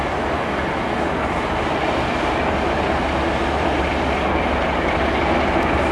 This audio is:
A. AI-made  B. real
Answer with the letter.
B